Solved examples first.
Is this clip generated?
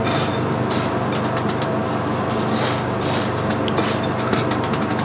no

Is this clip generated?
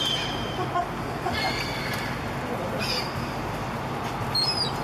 no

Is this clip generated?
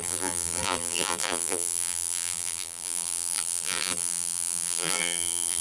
yes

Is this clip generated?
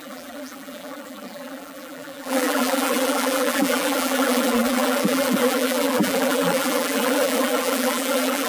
yes